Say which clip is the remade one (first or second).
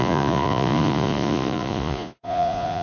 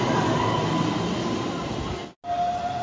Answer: first